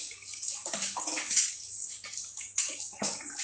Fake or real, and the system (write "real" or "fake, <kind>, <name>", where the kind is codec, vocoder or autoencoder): fake, codec, DAC